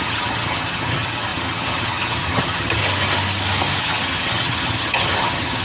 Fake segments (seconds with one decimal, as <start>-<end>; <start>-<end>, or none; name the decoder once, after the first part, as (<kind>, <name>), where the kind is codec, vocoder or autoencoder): 0.0-2.8 (vocoder, HiFi-GAN); 3.8-5.6